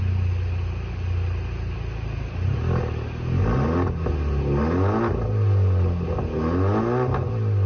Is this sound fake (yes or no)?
no